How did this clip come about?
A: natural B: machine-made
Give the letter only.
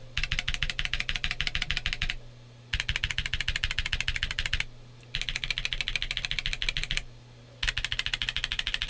A